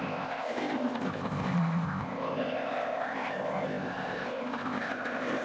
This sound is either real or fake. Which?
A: fake